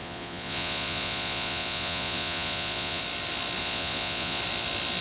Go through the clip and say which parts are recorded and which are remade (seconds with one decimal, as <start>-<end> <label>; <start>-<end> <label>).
0.0-3.0 remade; 3.0-3.6 recorded; 3.6-4.4 remade; 4.4-5.0 recorded